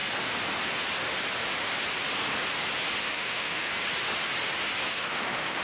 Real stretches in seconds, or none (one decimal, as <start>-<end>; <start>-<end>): 0.0-3.0; 3.7-4.9

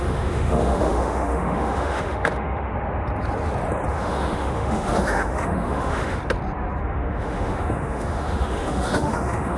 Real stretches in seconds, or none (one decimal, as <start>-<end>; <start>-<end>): 2.7-3.9; 6.2-6.8